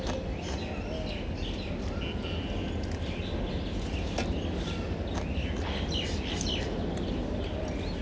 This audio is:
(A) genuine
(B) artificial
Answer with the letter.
A